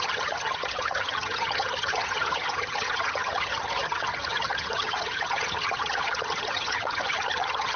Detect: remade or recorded remade